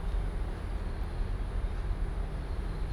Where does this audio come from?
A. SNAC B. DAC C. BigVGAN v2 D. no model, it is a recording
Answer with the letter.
D